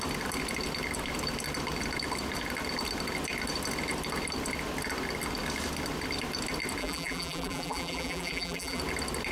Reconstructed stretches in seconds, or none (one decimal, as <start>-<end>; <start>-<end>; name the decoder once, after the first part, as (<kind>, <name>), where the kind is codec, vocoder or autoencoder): 6.8-8.8 (vocoder, BigVGAN v2)